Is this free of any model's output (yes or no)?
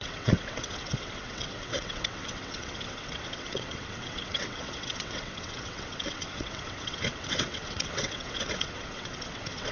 no